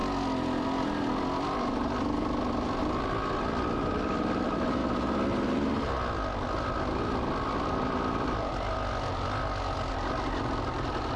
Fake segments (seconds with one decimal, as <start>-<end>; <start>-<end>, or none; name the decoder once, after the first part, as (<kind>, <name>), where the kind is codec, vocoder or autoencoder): 3.4-4.8 (vocoder, BigVGAN v2); 7.9-8.5; 9.9-11.2